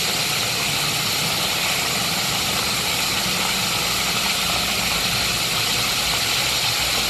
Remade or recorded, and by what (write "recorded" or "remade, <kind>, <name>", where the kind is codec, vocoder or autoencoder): recorded